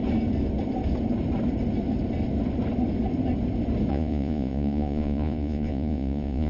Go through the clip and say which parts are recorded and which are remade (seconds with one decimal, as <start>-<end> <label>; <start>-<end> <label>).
0.0-3.9 recorded; 3.9-6.5 remade